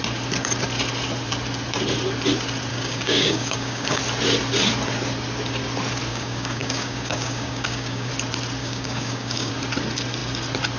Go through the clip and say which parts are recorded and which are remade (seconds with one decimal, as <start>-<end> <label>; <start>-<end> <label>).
0.0-2.7 recorded; 2.7-4.0 remade; 4.0-6.1 recorded; 6.1-8.1 remade; 8.1-8.6 recorded; 8.6-9.5 remade; 9.5-10.8 recorded